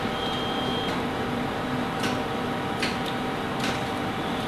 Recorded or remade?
remade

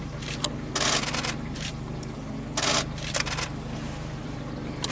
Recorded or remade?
recorded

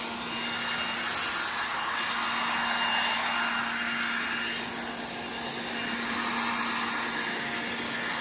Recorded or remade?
recorded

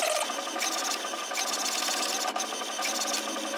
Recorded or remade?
recorded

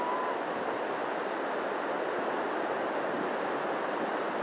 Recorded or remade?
recorded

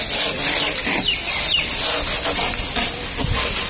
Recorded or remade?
recorded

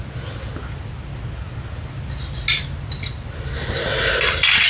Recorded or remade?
recorded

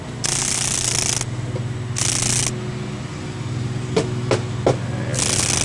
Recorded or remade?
recorded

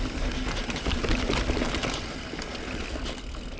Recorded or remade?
recorded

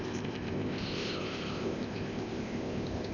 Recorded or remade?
remade